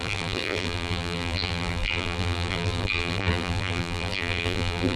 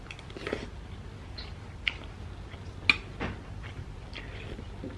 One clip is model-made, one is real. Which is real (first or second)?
second